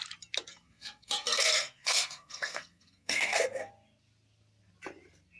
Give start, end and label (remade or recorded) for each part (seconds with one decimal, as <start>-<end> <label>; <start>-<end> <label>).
0.0-0.5 recorded; 0.5-3.7 remade; 3.7-5.4 recorded